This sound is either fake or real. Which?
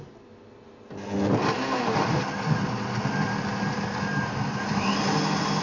real